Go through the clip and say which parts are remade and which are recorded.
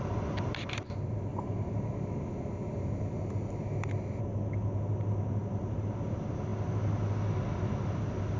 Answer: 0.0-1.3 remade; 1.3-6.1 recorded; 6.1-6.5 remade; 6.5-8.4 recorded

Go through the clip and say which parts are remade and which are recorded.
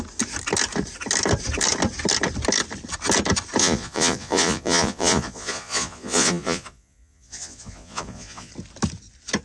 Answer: 0.0-3.6 recorded; 3.6-8.5 remade; 8.5-9.4 recorded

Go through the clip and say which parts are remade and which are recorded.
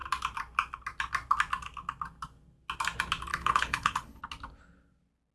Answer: 0.0-3.3 recorded; 3.3-4.2 remade; 4.2-5.3 recorded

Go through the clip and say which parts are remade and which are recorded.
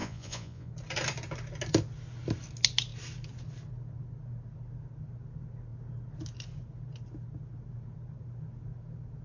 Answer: 0.0-0.7 remade; 0.7-9.2 recorded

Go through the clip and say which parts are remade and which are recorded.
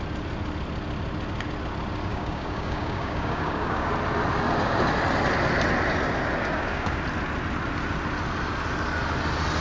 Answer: 0.0-2.1 recorded; 2.1-3.9 remade; 3.9-6.4 recorded; 6.4-7.0 remade; 7.0-9.6 recorded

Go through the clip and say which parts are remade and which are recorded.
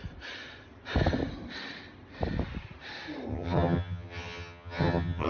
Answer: 0.0-3.3 recorded; 3.3-5.3 remade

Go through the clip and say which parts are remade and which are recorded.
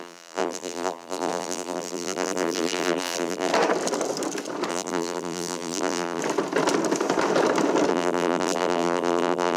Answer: 0.0-3.5 remade; 3.5-4.7 recorded; 4.7-6.2 remade; 6.2-7.9 recorded; 7.9-9.6 remade